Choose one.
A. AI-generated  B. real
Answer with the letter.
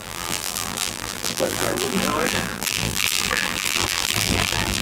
A